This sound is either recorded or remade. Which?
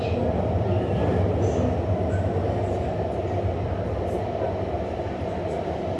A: recorded